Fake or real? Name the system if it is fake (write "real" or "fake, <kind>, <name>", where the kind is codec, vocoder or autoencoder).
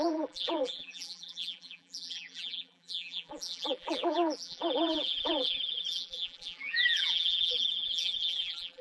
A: fake, vocoder, BigVGAN v2